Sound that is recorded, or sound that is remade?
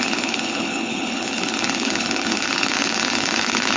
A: remade